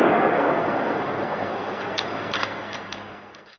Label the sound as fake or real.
fake